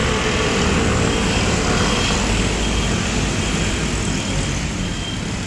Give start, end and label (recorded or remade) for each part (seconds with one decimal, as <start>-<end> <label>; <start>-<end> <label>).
0.0-5.5 recorded